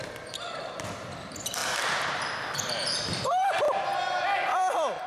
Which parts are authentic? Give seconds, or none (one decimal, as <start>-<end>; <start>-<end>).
3.9-4.5